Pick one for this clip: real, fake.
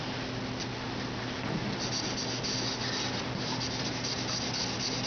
real